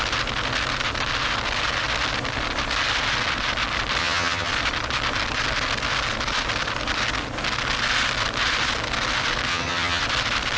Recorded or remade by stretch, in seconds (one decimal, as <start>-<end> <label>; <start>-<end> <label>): 0.0-4.0 recorded; 4.0-4.5 remade; 4.5-9.5 recorded; 9.5-10.0 remade; 10.0-10.6 recorded